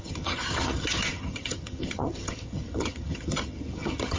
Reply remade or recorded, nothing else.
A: remade